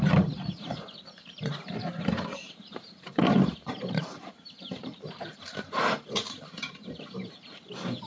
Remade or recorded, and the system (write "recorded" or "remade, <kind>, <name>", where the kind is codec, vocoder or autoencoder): remade, vocoder, BigVGAN v2